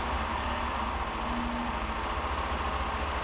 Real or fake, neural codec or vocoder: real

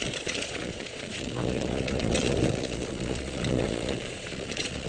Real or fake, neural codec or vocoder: fake, vocoder, Vocos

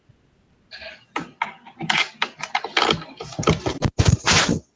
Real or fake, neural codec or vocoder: real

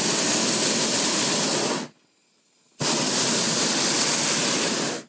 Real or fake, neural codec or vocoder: real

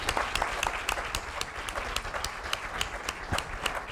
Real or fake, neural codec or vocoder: real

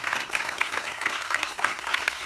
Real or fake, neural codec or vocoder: fake, codec, SNAC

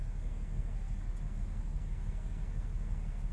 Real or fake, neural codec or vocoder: fake, codec, SNAC